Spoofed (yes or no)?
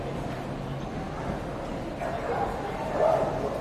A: no